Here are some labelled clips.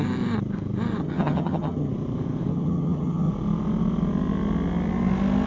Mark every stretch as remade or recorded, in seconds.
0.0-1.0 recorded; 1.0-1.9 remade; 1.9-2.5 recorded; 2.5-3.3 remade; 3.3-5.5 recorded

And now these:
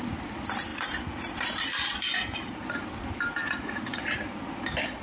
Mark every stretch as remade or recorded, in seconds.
0.0-0.7 recorded; 0.7-2.9 remade; 2.9-3.4 recorded; 3.4-4.4 remade; 4.4-5.0 recorded

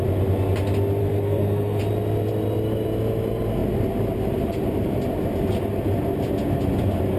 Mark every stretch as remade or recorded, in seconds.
0.0-1.0 recorded; 1.0-1.8 remade; 1.8-7.2 recorded

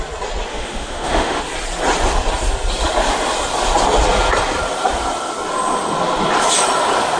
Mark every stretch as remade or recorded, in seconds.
0.0-0.5 recorded; 0.5-1.4 remade; 1.4-7.2 recorded

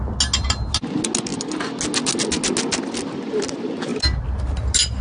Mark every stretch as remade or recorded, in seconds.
0.0-5.0 recorded

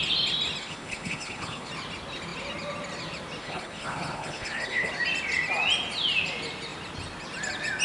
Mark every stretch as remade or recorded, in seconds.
0.0-0.6 recorded; 0.6-1.7 remade; 1.7-3.4 recorded; 3.4-4.9 remade; 4.9-7.8 recorded